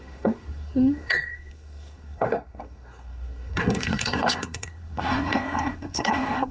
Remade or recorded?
remade